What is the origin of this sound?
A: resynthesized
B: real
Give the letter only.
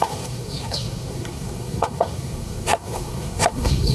A